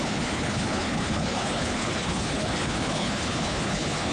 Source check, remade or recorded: remade